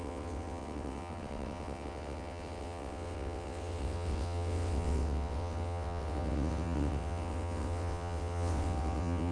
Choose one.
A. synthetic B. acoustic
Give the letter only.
A